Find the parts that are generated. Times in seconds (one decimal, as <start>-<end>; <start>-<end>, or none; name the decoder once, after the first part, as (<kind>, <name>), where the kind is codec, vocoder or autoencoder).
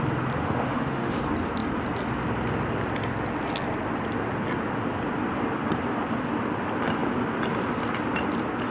0.4-1.2 (autoencoder, DAC-VAE)